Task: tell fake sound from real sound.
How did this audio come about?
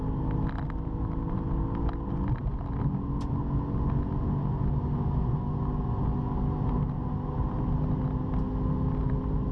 real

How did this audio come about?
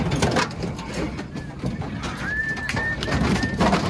real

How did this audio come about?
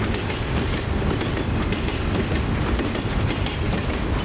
real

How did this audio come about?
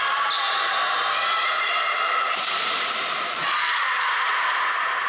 real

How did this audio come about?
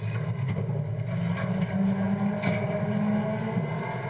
real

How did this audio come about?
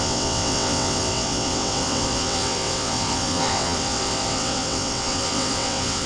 fake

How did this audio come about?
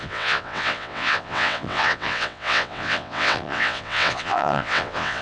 fake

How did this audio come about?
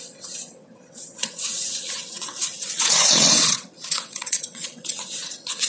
fake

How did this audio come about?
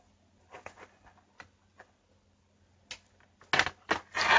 real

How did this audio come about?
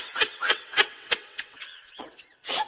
fake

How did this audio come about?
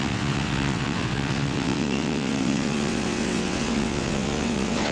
fake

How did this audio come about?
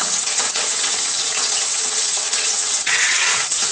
fake